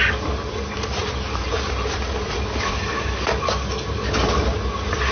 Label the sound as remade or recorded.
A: recorded